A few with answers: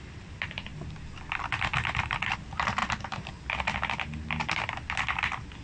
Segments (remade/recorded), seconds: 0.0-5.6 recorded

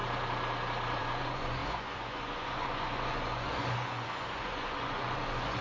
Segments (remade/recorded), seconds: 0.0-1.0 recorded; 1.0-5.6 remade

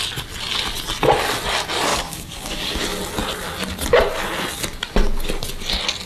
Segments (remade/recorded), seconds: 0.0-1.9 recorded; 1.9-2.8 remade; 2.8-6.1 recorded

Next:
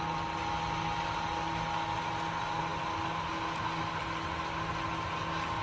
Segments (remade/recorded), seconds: 0.0-5.6 recorded

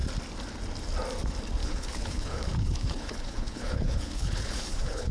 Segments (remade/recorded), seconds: 0.0-1.6 recorded; 1.6-5.1 remade

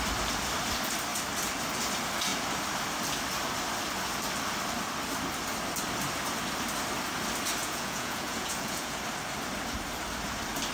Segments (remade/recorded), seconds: 0.0-7.6 recorded; 7.6-9.0 remade; 9.0-10.7 recorded